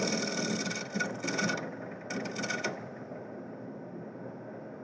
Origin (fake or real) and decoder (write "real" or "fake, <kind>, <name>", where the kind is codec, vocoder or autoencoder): real